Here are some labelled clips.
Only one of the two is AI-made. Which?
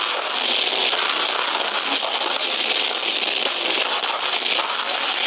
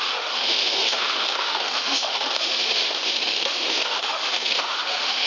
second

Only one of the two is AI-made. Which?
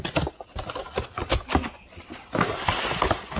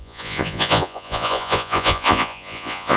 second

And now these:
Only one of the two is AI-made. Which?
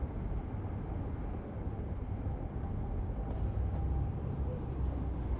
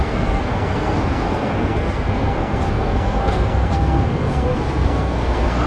second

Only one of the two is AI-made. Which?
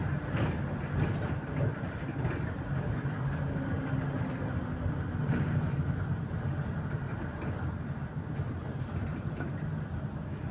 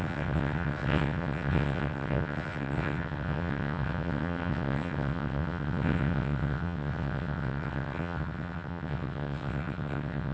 second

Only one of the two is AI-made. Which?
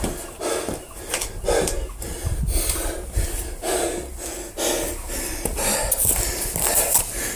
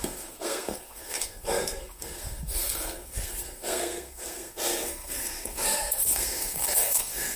second